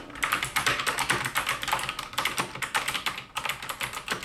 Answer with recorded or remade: recorded